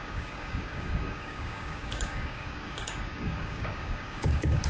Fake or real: fake